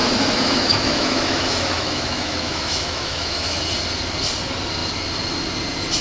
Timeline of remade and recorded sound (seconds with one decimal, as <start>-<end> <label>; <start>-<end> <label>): 0.0-3.6 remade; 3.6-6.0 recorded